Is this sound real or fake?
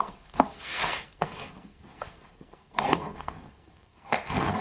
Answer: fake